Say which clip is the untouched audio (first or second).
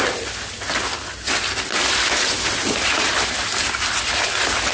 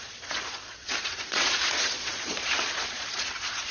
first